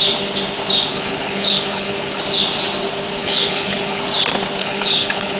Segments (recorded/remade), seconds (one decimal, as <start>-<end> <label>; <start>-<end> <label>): 0.0-0.9 recorded; 0.9-2.2 remade; 2.2-3.2 recorded; 3.2-4.0 remade; 4.0-4.6 recorded; 4.6-5.4 remade